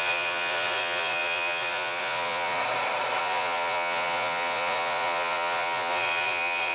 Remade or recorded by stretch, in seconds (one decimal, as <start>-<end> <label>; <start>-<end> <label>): 0.0-2.6 remade; 2.6-3.2 recorded; 3.2-6.7 remade